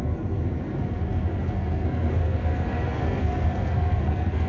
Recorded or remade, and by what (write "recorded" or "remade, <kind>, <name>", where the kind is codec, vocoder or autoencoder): remade, codec, SNAC